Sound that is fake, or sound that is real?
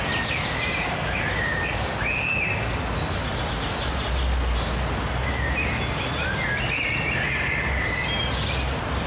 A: real